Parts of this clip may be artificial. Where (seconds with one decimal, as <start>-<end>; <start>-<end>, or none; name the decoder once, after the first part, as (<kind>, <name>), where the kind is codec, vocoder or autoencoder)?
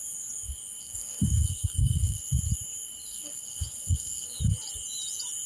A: 0.8-2.2 (codec, SNAC); 3.1-4.4